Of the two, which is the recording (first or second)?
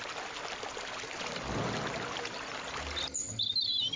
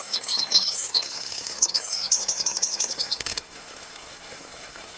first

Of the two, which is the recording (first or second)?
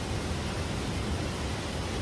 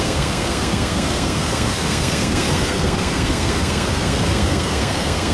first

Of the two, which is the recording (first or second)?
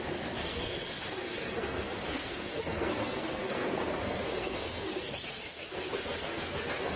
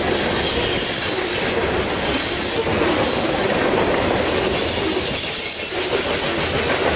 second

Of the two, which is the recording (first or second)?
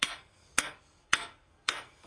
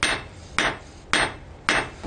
second